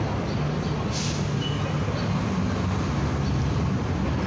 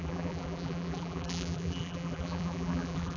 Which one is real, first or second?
first